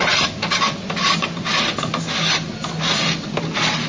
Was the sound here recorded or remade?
recorded